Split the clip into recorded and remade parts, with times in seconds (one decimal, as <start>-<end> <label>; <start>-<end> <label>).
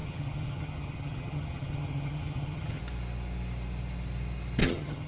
0.0-2.8 remade; 2.8-4.6 recorded; 4.6-5.1 remade